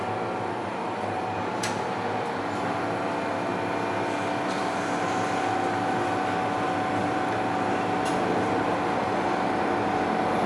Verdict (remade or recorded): recorded